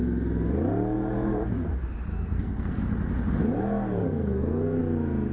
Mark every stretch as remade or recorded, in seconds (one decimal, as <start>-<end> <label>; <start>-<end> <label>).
0.0-2.1 recorded; 2.1-2.8 remade; 2.8-4.0 recorded; 4.0-4.8 remade; 4.8-5.3 recorded